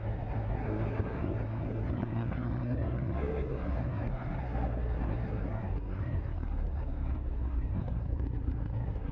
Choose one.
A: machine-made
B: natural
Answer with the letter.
A